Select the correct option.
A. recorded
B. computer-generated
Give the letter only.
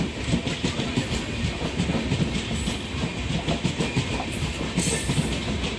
A